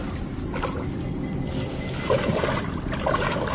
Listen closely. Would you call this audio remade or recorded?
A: recorded